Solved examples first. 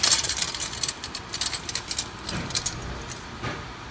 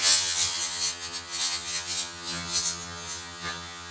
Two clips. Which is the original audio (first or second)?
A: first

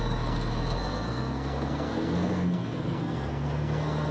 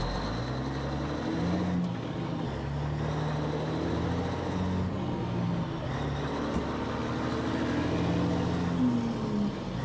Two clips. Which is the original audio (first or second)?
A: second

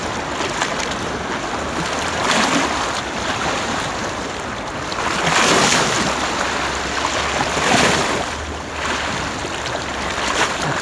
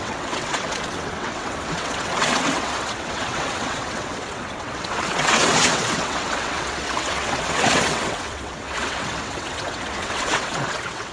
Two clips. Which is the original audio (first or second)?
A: first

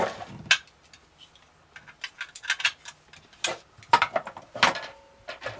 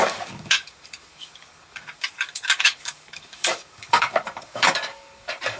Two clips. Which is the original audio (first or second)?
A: first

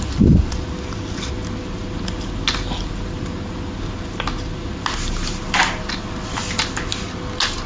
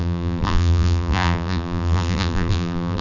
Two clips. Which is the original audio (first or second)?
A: first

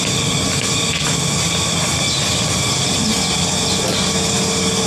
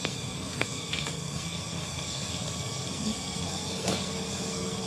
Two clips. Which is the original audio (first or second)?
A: first